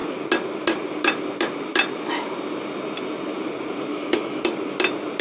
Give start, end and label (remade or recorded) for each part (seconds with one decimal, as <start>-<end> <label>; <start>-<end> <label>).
0.0-3.9 recorded; 3.9-4.4 remade; 4.4-5.2 recorded